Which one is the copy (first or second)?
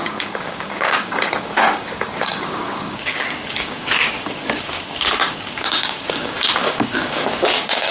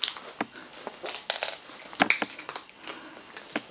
first